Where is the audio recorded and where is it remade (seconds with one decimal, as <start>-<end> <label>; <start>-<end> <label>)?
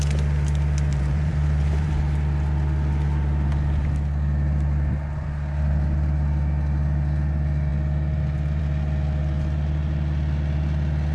0.0-0.9 recorded; 0.9-1.9 remade; 1.9-11.1 recorded